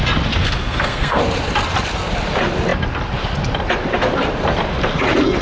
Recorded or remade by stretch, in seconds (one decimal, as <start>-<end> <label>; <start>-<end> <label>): 0.0-0.4 recorded; 0.4-1.2 remade; 1.2-5.4 recorded